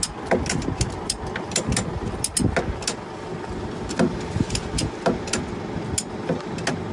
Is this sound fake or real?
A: real